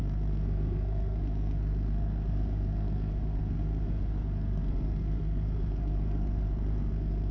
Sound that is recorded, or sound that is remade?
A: remade